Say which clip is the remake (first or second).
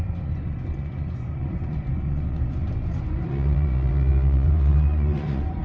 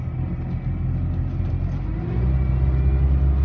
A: first